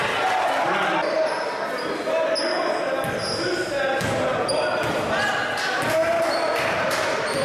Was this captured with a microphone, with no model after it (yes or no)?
yes